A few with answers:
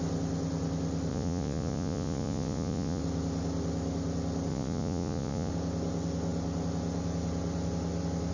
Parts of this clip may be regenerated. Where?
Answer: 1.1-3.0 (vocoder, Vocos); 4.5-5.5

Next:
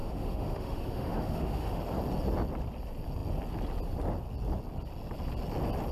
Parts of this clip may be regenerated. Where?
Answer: 0.0-1.8 (autoencoder, DAC-VAE)

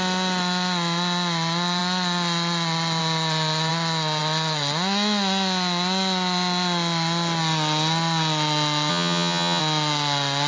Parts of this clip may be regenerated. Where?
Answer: 8.9-9.6 (vocoder, HiFi-GAN)

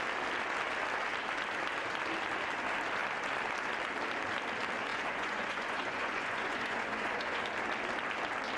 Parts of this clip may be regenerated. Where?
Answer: 4.9-7.4 (vocoder, Vocos)

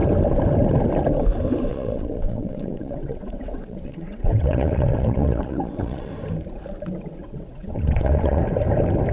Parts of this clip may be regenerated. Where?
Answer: 1.7-6.1 (vocoder, WaveNeXt); 7.2-8.4